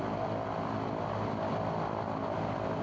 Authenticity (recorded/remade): recorded